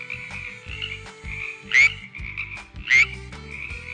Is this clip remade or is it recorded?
recorded